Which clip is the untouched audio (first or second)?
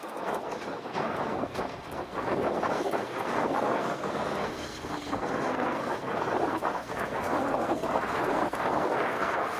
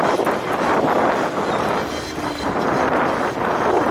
second